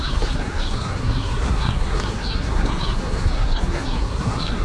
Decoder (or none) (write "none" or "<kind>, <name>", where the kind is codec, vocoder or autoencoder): codec, SNAC